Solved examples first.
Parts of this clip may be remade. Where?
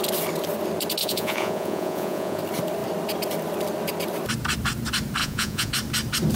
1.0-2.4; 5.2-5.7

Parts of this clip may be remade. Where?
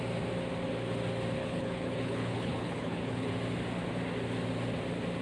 1.4-3.3